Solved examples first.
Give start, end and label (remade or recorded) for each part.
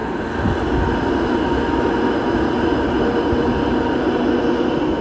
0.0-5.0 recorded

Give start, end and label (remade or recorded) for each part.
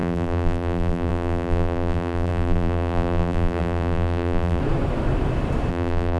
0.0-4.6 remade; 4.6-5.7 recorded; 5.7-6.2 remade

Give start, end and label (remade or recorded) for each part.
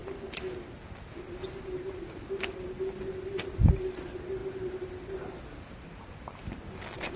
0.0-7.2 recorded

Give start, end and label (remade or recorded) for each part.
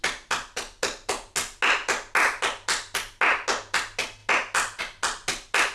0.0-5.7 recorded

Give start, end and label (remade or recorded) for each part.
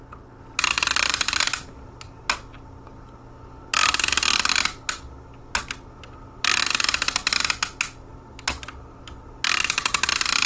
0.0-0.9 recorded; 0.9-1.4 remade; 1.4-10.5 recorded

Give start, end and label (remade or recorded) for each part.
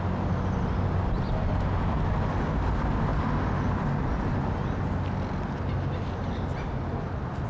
0.0-7.5 recorded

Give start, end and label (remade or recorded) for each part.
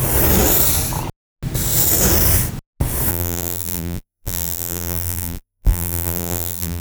0.0-3.1 recorded; 3.1-6.8 remade